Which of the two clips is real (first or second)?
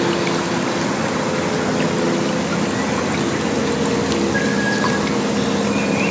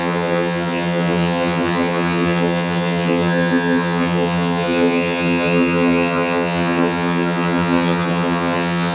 first